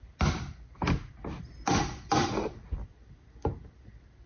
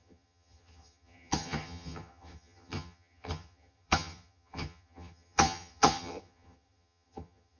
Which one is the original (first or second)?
first